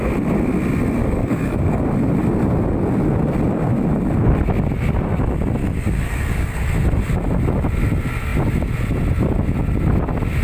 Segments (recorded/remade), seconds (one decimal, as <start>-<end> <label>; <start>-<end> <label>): 0.0-1.0 recorded; 1.0-1.8 remade; 1.8-5.6 recorded; 5.6-6.7 remade; 6.7-10.4 recorded